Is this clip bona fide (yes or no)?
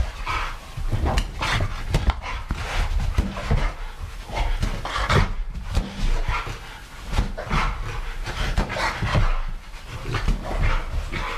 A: yes